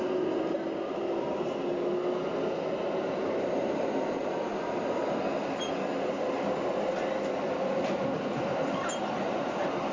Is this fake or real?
real